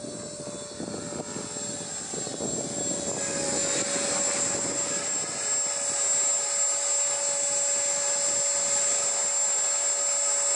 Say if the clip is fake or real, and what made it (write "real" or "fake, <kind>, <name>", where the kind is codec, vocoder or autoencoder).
real